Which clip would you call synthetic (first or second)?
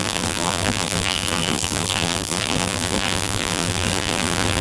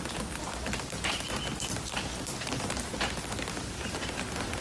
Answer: first